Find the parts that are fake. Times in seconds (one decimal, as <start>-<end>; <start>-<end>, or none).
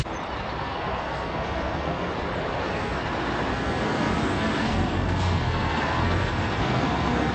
0.6-2.1; 2.5-3.0; 3.5-7.3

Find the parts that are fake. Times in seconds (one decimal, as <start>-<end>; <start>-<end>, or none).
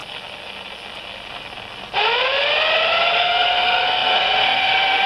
3.1-5.1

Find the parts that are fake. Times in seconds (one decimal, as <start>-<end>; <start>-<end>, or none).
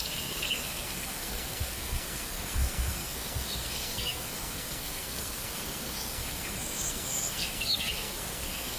0.0-8.8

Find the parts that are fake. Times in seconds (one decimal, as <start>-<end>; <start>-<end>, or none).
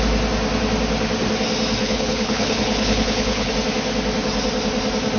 1.8-3.5